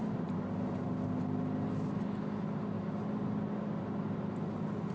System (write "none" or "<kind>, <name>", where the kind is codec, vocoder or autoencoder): none